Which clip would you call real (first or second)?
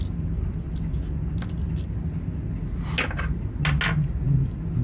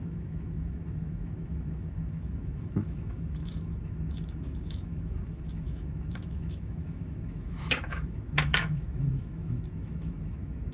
first